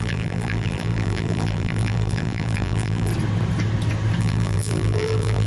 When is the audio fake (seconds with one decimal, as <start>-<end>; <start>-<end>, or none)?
0.0-3.1; 4.2-5.5